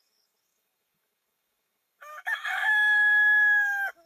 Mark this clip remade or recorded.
remade